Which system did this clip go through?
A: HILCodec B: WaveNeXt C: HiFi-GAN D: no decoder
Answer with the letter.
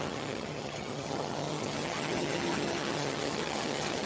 C